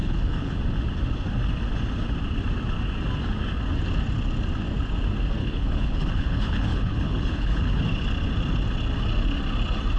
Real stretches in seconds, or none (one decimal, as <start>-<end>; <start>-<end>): 0.6-5.4; 7.8-10.0